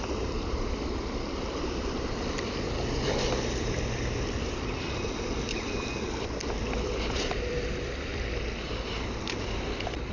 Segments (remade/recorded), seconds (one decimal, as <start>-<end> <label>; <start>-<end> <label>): 0.0-8.1 remade; 8.1-8.6 recorded; 8.6-10.1 remade